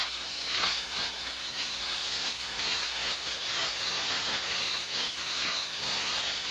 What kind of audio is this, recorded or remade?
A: remade